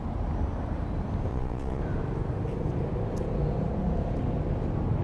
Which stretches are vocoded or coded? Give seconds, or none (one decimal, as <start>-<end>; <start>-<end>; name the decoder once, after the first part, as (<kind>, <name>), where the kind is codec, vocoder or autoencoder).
1.3-1.8 (vocoder, Vocos)